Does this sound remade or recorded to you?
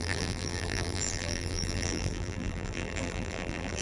remade